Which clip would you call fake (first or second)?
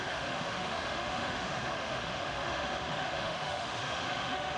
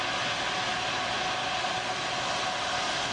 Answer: first